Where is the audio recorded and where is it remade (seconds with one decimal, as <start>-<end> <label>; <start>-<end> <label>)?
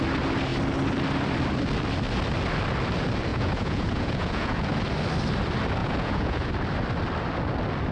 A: 0.0-3.3 recorded; 3.3-4.7 remade; 4.7-5.8 recorded; 5.8-6.5 remade; 6.5-7.9 recorded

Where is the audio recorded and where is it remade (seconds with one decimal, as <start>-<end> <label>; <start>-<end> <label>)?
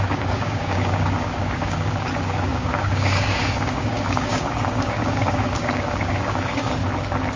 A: 0.0-6.8 remade; 6.8-7.4 recorded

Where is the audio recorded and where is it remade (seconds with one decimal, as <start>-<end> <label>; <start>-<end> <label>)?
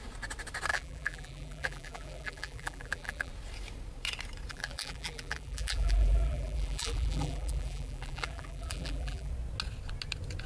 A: 0.0-0.7 recorded; 0.7-3.3 remade; 3.3-4.5 recorded; 4.5-9.3 remade; 9.3-10.5 recorded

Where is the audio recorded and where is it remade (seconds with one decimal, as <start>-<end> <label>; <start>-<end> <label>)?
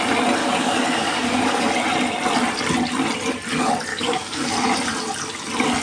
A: 0.0-0.4 recorded; 0.4-1.7 remade; 1.7-3.9 recorded; 3.9-4.4 remade; 4.4-5.8 recorded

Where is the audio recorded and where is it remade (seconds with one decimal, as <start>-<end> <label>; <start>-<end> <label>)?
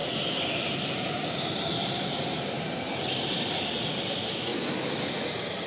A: 0.0-5.7 recorded